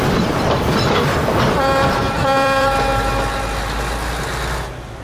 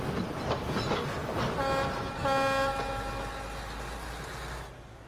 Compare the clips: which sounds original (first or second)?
second